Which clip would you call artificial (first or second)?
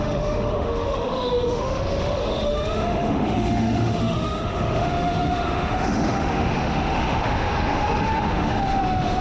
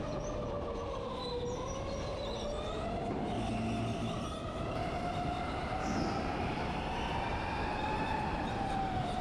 first